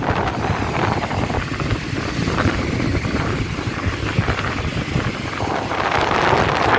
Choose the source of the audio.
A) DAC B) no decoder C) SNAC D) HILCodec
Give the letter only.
B